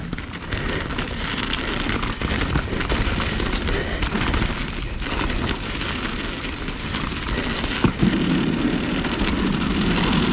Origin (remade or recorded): recorded